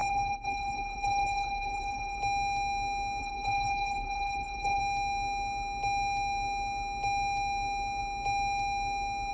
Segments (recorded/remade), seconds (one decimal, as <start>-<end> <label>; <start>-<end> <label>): 0.0-2.2 remade; 2.2-3.2 recorded; 3.2-4.8 remade; 4.8-9.3 recorded